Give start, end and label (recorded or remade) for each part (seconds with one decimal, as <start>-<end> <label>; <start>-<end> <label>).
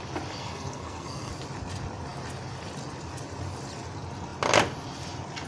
0.0-0.4 recorded; 0.4-1.3 remade; 1.3-5.5 recorded